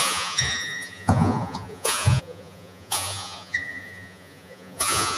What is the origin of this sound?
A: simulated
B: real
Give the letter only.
A